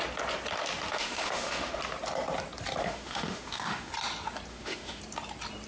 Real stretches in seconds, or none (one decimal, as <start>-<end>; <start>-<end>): 0.0-0.9; 1.8-2.8; 3.9-4.5; 5.0-5.7